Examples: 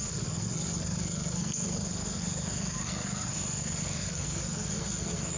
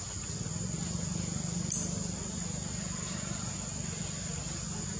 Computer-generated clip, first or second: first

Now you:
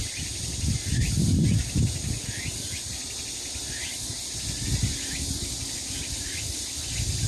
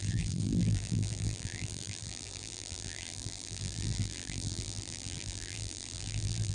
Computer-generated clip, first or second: second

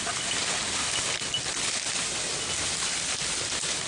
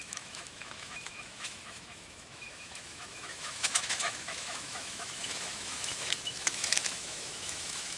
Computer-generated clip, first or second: second